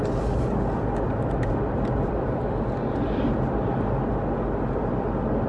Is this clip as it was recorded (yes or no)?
yes